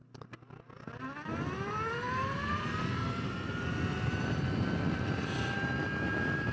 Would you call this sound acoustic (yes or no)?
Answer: yes